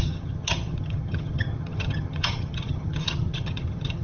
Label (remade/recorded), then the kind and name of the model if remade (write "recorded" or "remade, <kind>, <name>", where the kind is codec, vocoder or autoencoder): remade, vocoder, HiFi-GAN